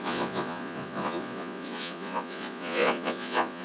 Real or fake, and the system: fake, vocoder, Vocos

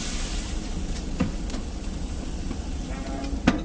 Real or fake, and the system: real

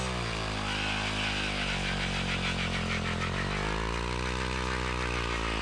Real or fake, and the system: real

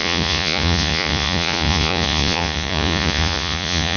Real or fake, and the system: fake, vocoder, Vocos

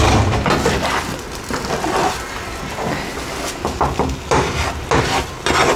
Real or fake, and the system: real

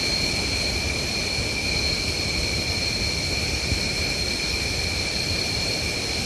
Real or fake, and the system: real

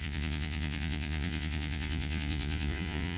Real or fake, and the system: fake, vocoder, Vocos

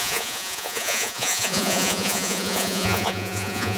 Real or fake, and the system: fake, vocoder, Vocos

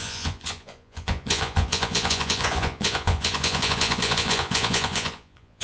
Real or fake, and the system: fake, vocoder, Vocos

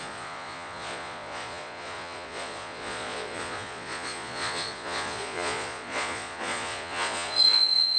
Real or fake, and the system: fake, vocoder, Vocos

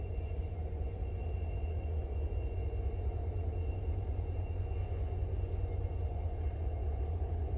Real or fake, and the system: fake, vocoder, Vocos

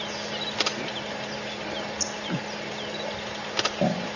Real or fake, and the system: real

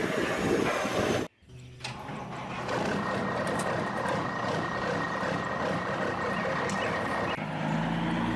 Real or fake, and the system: real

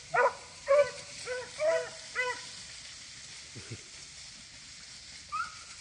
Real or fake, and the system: real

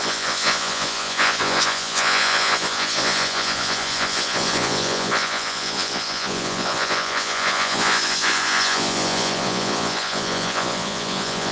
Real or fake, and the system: fake, vocoder, Vocos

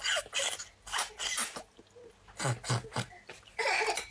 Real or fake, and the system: real